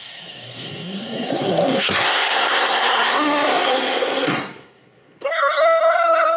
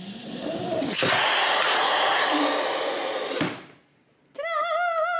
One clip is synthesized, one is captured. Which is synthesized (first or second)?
first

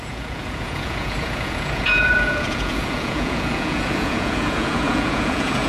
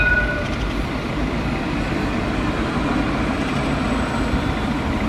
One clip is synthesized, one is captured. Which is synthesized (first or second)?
first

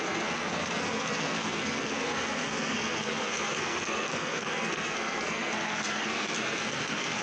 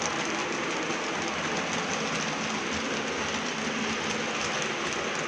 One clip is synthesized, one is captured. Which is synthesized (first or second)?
first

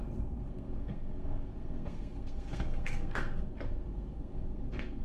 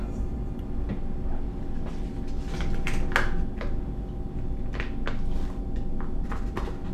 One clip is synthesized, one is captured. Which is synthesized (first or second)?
first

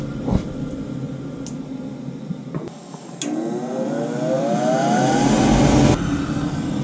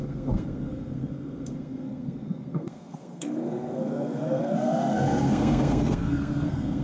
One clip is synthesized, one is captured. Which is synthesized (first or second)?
second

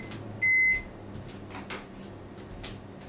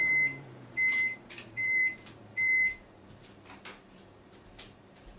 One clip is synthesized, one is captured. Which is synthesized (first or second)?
second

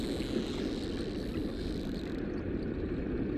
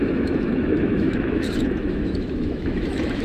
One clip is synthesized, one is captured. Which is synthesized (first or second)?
second